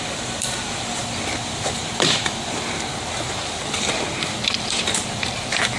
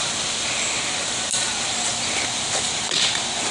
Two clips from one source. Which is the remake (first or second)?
first